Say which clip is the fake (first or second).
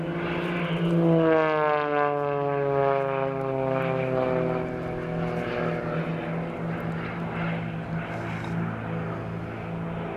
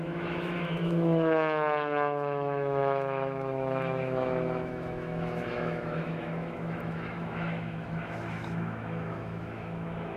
second